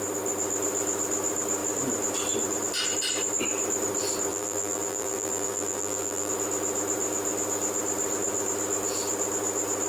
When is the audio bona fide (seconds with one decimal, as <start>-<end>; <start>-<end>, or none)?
0.0-4.3; 6.3-9.9